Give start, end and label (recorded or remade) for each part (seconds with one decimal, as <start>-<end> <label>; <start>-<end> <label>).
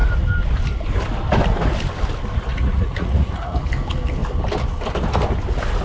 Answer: 0.0-2.5 recorded; 2.5-3.6 remade; 3.6-5.8 recorded